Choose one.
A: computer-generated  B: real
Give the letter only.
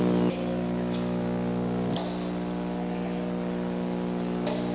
B